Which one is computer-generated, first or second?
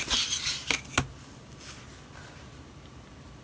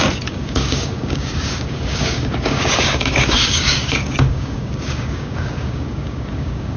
second